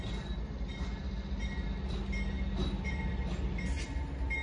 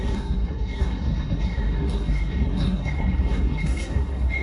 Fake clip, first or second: second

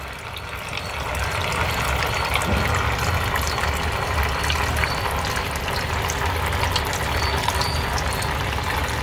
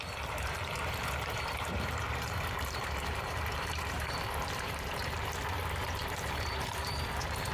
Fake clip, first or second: second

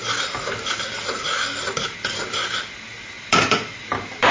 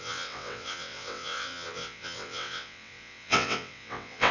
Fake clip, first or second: second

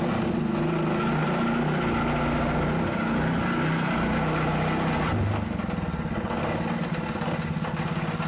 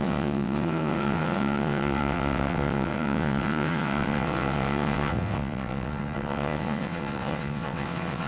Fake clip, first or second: second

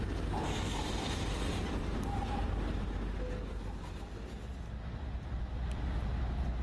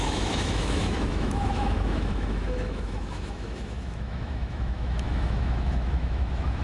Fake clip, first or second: second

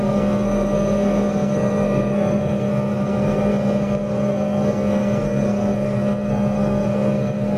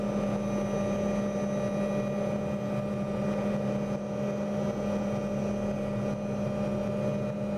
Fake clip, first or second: first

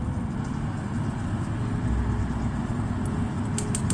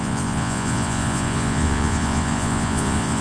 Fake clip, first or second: second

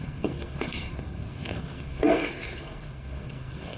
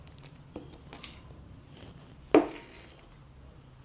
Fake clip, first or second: first